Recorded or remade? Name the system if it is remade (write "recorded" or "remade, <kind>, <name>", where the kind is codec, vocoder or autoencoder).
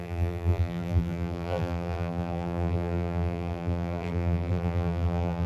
remade, vocoder, BigVGAN v2